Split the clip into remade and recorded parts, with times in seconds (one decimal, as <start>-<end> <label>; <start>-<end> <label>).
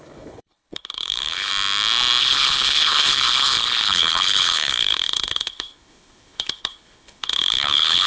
0.0-1.5 remade; 1.5-2.2 recorded; 2.2-8.1 remade